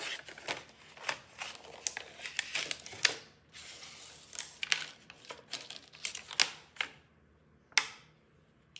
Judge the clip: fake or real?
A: real